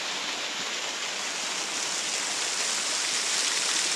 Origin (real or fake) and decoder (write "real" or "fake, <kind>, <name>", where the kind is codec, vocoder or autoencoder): real